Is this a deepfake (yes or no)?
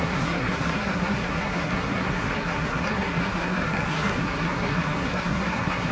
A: yes